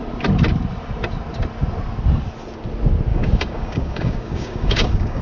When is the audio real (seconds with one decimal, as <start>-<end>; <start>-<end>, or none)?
0.0-3.1